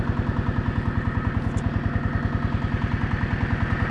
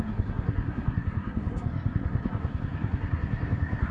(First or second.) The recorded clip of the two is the first